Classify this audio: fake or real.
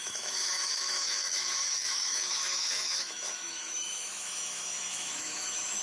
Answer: fake